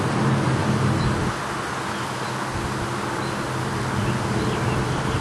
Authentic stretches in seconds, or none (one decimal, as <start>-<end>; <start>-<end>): 0.0-5.2